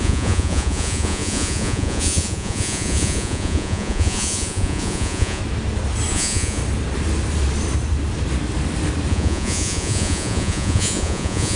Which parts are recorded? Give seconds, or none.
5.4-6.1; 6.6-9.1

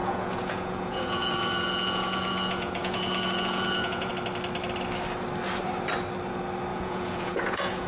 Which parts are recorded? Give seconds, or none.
4.1-6.7

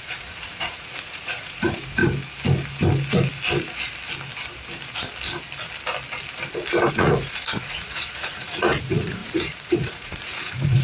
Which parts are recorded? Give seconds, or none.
2.0-6.9

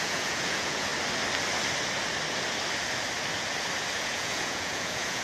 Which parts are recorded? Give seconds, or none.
0.9-4.0

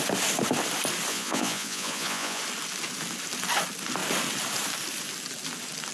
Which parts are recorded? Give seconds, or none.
0.0-1.1; 2.4-5.9

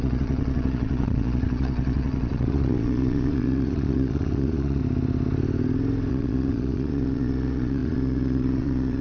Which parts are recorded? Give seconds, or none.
4.8-6.1

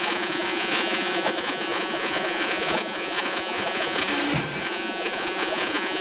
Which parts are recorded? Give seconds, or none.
4.1-4.6

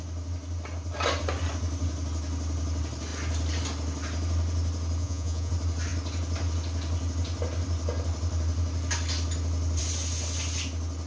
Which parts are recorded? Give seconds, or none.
0.0-5.0; 5.5-11.1